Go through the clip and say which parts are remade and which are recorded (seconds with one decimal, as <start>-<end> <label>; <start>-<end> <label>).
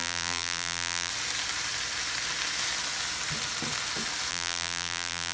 0.0-1.1 remade; 1.1-4.3 recorded; 4.3-5.3 remade